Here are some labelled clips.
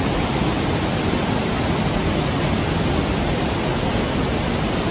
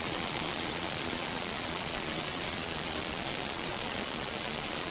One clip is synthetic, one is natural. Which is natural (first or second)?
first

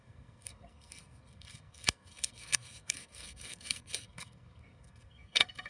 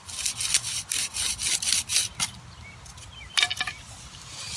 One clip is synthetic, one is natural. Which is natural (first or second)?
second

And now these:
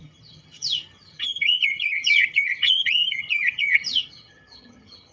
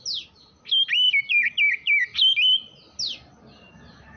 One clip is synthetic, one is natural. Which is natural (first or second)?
second